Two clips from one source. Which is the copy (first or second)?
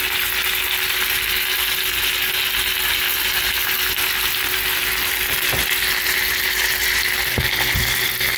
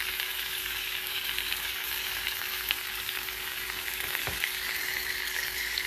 second